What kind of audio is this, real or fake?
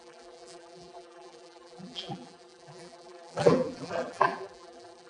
fake